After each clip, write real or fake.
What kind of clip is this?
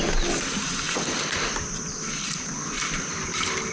real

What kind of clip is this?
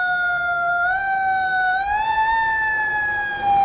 real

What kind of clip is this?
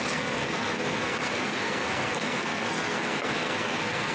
fake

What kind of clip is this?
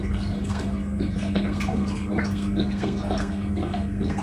fake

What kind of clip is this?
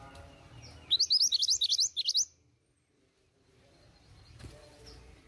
real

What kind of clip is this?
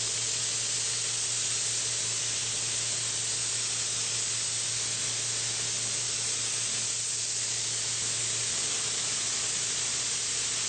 real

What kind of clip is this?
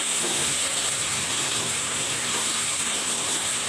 fake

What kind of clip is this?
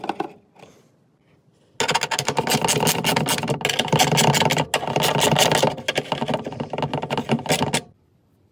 real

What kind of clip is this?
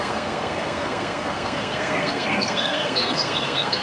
fake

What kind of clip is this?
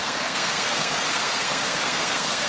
fake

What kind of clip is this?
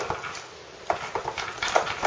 real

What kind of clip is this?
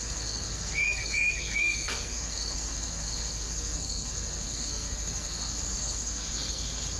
fake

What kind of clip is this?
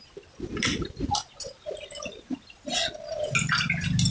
real